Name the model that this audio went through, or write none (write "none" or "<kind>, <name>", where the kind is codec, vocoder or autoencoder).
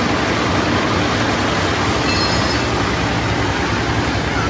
none